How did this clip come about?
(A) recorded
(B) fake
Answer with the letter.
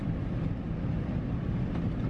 A